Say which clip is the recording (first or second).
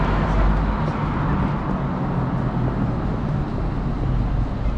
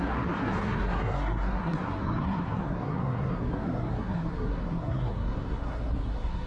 first